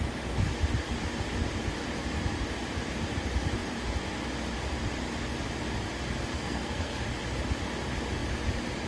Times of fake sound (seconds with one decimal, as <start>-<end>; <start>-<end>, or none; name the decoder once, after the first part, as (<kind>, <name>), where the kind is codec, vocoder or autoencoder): 6.3-7.0 (codec, SNAC)